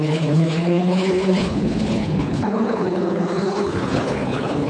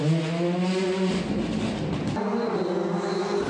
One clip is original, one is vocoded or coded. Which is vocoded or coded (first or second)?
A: first